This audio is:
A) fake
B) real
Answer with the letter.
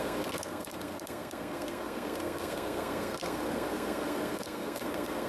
A